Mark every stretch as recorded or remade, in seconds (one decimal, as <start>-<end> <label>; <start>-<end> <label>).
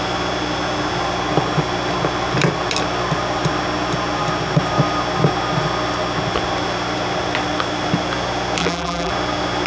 0.0-8.6 recorded; 8.6-9.1 remade; 9.1-9.7 recorded